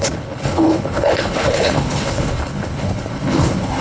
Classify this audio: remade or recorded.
remade